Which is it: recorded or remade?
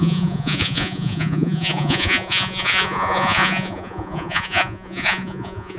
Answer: remade